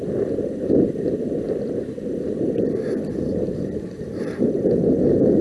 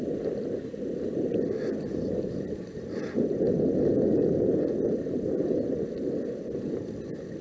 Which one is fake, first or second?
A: first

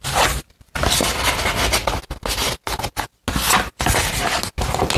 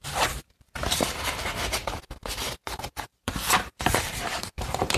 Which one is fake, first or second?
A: second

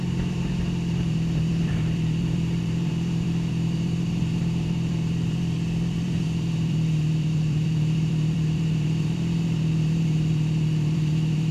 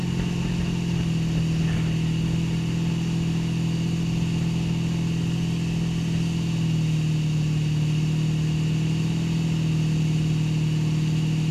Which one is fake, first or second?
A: first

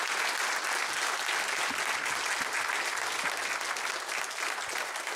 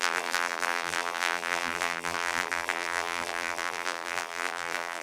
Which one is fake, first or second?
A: second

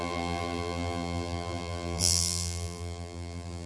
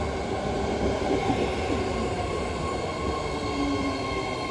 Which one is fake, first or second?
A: first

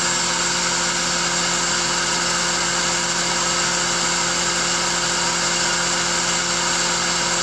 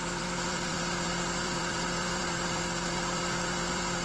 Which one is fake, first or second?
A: second